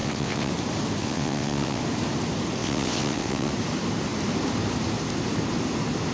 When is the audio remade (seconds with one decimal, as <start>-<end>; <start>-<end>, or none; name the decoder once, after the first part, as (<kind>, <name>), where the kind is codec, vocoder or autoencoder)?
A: 0.0-0.5 (vocoder, WaveNeXt); 1.0-1.8; 2.6-3.5